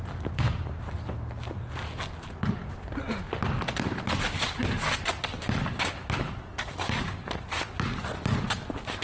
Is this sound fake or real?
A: real